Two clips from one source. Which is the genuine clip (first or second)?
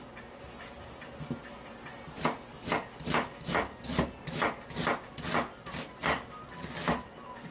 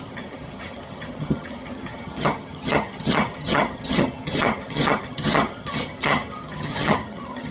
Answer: first